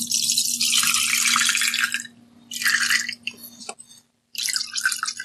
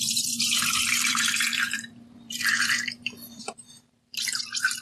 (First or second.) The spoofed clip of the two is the second